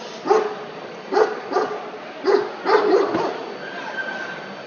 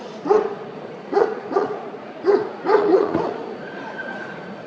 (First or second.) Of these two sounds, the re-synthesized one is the second